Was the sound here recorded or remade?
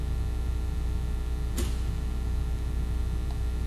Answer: recorded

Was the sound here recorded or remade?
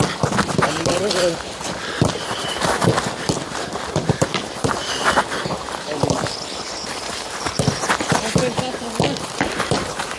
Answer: recorded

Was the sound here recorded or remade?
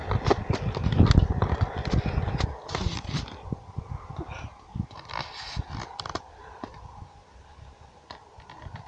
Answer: recorded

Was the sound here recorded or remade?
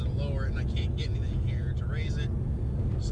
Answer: recorded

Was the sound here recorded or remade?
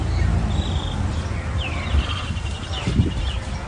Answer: recorded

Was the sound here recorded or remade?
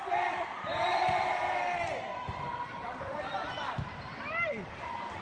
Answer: remade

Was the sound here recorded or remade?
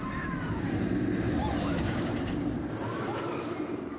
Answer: remade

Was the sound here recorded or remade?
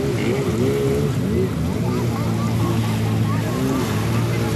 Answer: recorded